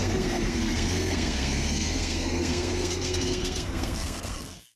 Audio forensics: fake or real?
fake